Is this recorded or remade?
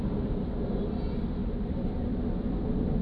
recorded